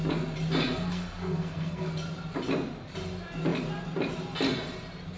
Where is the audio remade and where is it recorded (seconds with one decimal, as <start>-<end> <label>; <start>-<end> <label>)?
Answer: 0.0-0.9 recorded; 0.9-1.9 remade; 1.9-5.2 recorded